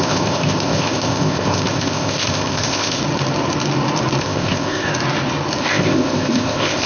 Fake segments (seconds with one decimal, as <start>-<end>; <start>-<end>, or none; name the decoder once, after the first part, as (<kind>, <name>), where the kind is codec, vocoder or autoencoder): 0.0-3.0 (codec, ZipCodec); 4.2-4.9; 5.6-6.9